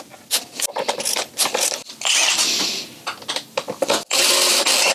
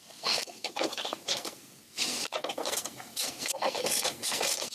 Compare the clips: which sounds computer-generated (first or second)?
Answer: second